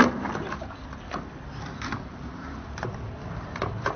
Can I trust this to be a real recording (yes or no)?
no